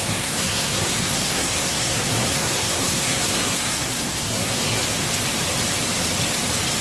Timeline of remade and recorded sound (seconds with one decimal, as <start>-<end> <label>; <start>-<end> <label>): 0.0-4.8 remade; 4.8-6.8 recorded